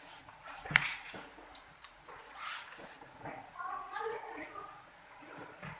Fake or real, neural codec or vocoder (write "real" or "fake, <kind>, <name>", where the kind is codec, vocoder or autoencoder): fake, vocoder, Vocos